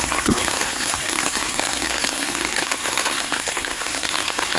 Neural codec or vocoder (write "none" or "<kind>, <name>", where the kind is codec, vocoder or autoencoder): codec, SNAC